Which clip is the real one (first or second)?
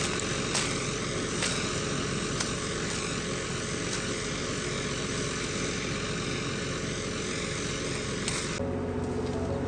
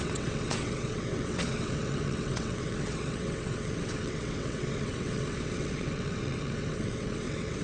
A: first